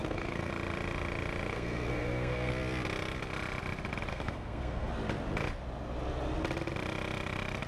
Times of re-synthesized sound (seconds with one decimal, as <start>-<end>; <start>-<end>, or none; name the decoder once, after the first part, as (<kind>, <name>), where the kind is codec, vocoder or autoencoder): 0.0-0.5 (codec, SNAC); 1.5-2.5; 4.1-4.9